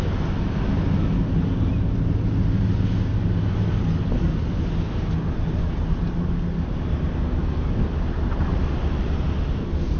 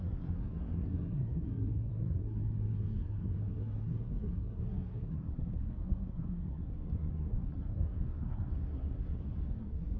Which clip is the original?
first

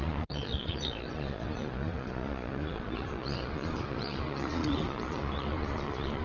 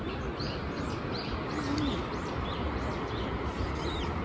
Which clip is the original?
second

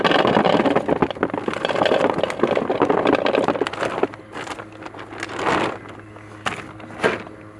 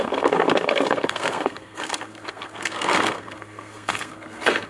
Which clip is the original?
first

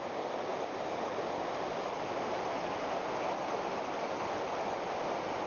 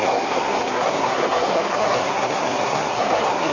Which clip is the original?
first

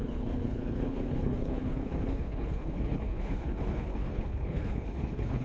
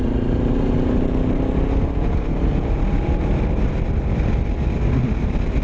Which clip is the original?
second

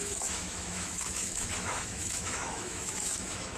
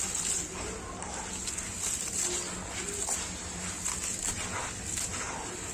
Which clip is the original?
second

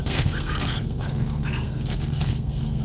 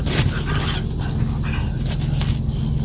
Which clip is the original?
second